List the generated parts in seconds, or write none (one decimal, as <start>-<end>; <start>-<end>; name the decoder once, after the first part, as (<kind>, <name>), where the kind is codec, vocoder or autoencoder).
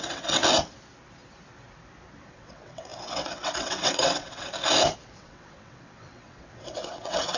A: 0.0-0.4 (vocoder, WaveNeXt); 2.3-4.5; 5.2-7.4